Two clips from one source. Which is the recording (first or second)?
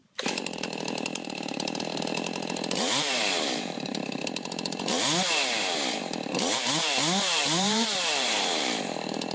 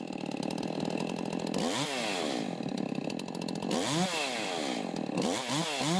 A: second